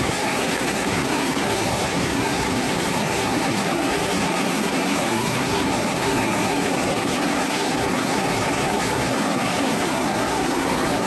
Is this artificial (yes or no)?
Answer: yes